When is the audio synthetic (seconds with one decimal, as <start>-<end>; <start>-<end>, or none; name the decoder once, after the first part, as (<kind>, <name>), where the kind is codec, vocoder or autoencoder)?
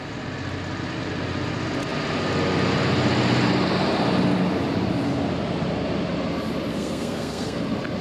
6.7-7.6 (codec, SNAC)